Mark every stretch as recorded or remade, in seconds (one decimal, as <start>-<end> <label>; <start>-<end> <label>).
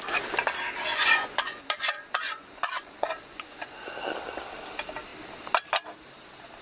0.0-0.9 recorded; 0.9-3.8 remade; 3.8-6.6 recorded